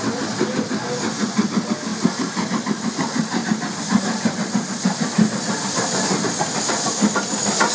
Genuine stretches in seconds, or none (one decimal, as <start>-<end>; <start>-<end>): 0.0-7.7